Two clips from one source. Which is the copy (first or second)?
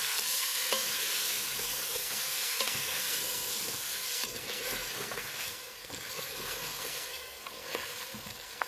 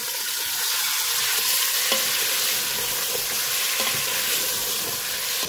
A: first